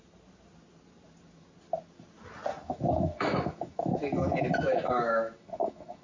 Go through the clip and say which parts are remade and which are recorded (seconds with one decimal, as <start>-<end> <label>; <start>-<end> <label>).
0.0-2.5 recorded; 2.5-6.0 remade